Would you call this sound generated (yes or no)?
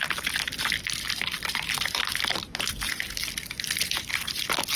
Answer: no